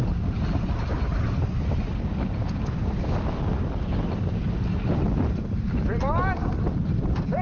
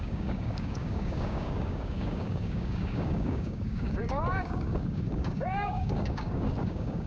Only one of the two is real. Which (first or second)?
first